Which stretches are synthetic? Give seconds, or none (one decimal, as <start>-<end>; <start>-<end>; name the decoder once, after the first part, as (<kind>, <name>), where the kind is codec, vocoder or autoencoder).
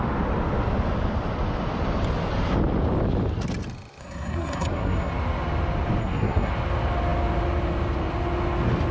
4.0-5.1 (codec, SNAC); 6.0-6.5